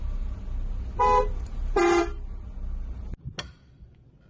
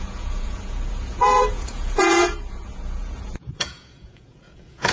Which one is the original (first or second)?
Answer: first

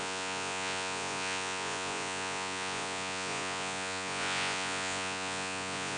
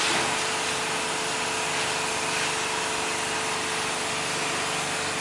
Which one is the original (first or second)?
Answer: second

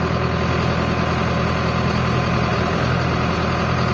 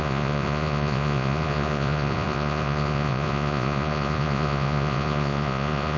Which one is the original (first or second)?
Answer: first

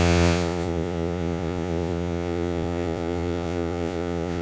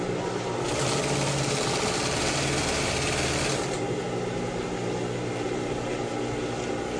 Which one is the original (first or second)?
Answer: second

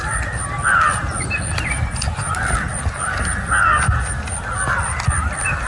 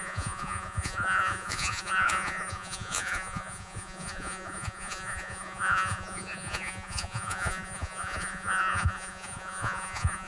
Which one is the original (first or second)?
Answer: first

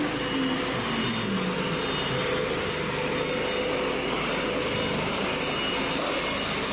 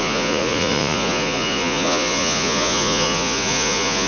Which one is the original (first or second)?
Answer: first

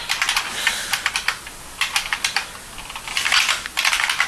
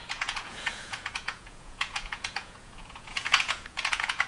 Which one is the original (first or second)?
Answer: first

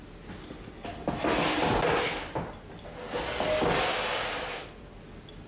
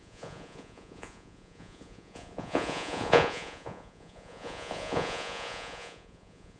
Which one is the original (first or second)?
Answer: first